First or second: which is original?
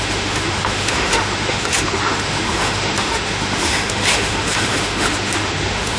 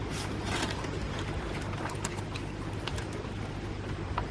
second